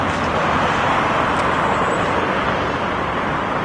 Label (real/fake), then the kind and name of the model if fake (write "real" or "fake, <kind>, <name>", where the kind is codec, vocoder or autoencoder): real